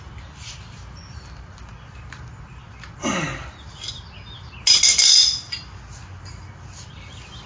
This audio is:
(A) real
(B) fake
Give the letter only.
A